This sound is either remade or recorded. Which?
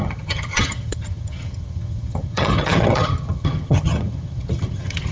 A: remade